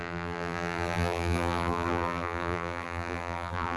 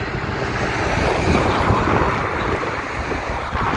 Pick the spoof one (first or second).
first